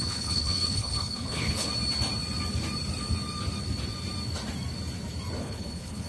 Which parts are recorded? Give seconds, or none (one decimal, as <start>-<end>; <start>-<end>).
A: 1.7-5.4